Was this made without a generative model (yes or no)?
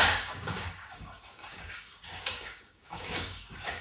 no